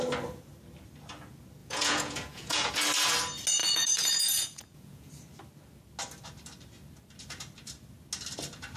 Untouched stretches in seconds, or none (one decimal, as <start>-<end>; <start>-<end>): 0.0-1.6; 2.7-3.6; 5.1-8.8